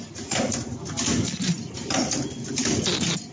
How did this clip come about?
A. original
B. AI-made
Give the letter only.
A